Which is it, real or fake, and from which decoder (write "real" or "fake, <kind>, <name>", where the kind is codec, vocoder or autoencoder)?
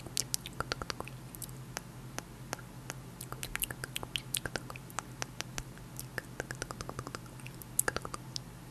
real